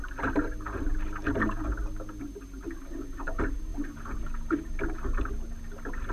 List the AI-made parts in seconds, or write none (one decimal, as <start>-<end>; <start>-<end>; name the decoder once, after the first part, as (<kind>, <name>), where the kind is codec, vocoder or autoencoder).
none